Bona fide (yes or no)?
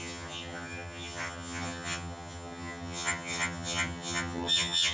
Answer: no